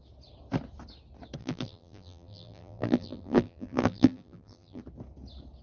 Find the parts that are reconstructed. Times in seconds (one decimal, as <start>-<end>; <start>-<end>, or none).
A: 1.4-4.8